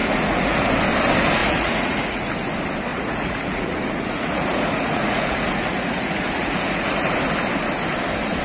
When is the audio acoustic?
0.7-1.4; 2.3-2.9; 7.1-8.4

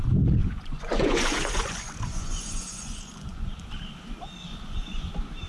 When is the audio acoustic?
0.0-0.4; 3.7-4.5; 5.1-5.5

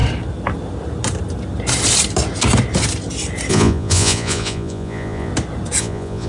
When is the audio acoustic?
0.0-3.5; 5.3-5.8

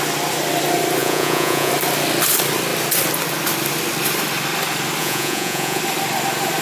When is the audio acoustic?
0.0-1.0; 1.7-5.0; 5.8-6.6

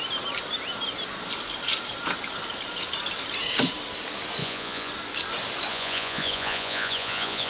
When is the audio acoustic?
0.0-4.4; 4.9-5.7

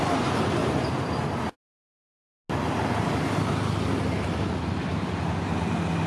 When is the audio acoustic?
0.0-6.1

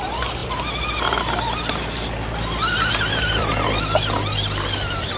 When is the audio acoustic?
0.0-5.2

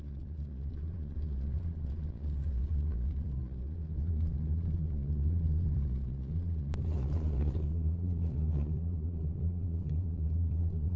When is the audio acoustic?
none